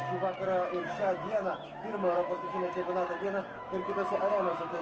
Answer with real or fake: fake